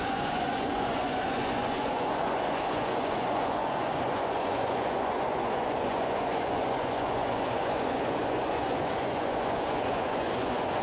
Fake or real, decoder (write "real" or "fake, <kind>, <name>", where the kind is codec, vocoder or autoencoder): fake, vocoder, Vocos